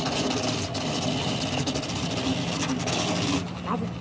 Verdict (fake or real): real